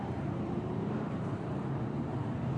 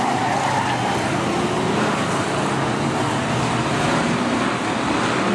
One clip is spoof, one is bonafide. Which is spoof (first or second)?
first